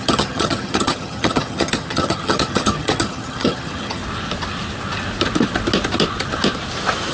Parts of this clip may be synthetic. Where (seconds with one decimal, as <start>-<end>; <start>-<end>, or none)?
0.0-4.0